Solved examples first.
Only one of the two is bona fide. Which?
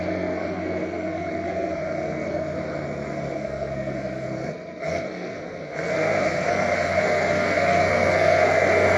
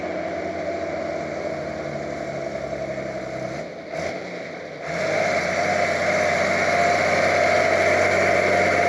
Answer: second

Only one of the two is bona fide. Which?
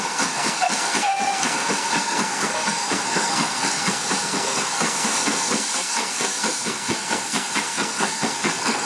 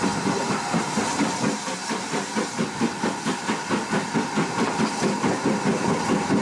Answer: second